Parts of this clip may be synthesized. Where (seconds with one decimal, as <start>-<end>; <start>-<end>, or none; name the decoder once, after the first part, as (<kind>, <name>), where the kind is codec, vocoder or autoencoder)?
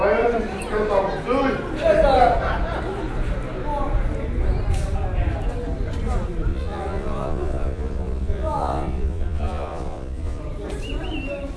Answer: 6.5-10.4 (vocoder, Vocos)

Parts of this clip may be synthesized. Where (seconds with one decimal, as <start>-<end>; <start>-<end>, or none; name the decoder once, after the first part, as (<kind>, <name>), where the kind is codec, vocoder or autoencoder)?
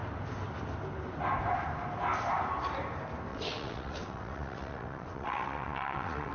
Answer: 3.3-6.3 (vocoder, WaveNeXt)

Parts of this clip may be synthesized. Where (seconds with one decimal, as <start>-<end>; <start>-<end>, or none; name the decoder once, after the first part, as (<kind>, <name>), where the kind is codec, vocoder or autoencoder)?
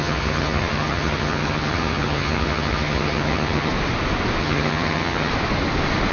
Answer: 0.0-3.7 (vocoder, HiFi-GAN); 4.4-5.3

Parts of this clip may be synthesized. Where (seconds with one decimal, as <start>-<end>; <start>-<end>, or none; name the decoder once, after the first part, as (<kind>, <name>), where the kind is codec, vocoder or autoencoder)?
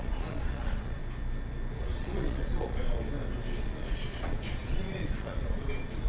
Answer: 0.0-1.0 (vocoder, Vocos); 1.8-3.0; 3.6-6.1